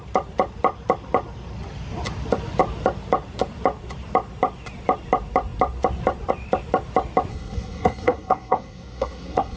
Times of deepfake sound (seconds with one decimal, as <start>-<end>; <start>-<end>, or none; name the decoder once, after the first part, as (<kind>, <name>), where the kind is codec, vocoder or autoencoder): 7.3-9.6 (codec, SNAC)